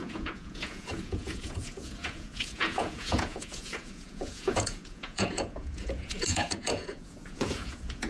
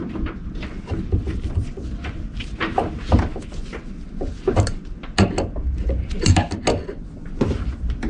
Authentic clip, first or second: second